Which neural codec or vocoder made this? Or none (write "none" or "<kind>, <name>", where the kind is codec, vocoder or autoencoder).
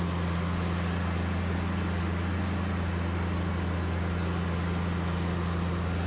none